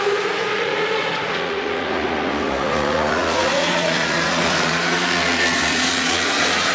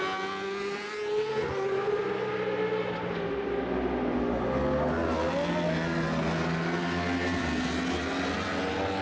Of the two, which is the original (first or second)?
second